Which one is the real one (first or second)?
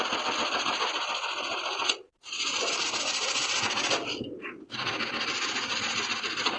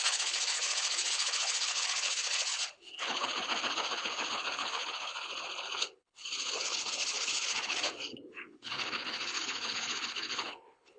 first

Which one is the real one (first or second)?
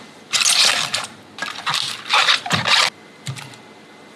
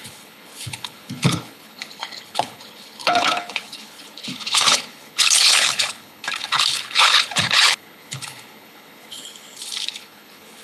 first